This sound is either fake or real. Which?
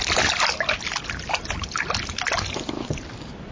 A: real